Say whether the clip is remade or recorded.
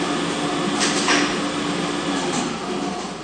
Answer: recorded